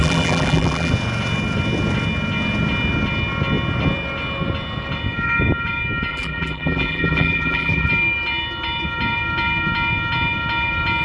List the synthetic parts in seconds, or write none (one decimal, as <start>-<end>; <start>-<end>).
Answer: 0.0-0.9; 6.1-7.9